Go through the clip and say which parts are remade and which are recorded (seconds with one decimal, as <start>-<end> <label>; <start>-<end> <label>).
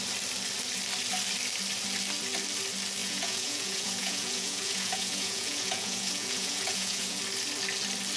0.0-3.0 recorded; 3.0-7.2 remade; 7.2-8.2 recorded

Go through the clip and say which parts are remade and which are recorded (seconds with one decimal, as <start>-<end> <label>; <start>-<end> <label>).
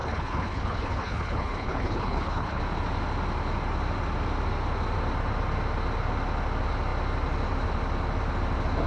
0.0-2.6 remade; 2.6-8.9 recorded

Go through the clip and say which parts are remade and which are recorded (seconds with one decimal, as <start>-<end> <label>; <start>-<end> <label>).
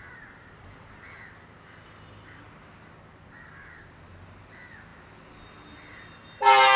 0.0-6.8 recorded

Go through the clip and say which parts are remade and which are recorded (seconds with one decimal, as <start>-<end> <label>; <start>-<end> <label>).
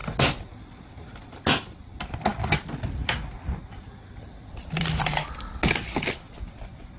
0.0-2.3 recorded; 2.3-5.4 remade; 5.4-7.0 recorded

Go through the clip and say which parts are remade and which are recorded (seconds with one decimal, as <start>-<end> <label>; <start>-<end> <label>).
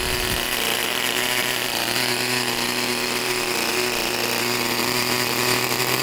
0.0-0.9 recorded; 0.9-2.1 remade; 2.1-4.8 recorded; 4.8-6.0 remade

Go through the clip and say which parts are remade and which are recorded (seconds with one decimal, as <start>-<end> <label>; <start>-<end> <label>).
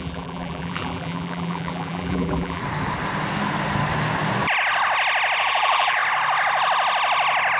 0.0-2.6 remade; 2.6-5.4 recorded; 5.4-6.0 remade; 6.0-7.6 recorded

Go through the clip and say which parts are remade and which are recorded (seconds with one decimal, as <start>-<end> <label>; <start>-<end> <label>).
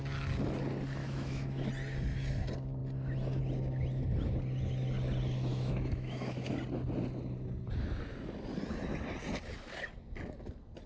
0.0-1.0 recorded; 1.0-1.7 remade; 1.7-5.5 recorded; 5.5-6.5 remade; 6.5-10.9 recorded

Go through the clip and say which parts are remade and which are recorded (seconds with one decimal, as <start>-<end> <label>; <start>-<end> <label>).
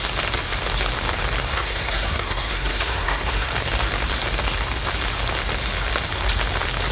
0.0-1.5 recorded; 1.5-3.5 remade; 3.5-6.9 recorded